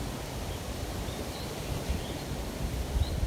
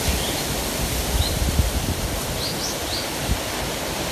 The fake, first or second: first